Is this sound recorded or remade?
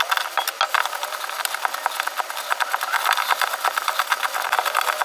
recorded